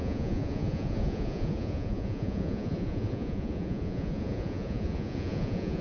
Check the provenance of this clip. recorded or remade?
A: remade